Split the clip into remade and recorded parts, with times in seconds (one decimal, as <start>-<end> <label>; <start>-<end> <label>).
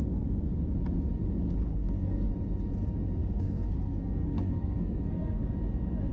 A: 0.0-1.7 recorded; 1.7-2.3 remade; 2.3-3.2 recorded; 3.2-5.5 remade; 5.5-6.1 recorded